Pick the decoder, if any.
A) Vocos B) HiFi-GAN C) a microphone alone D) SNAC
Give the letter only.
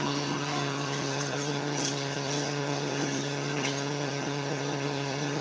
B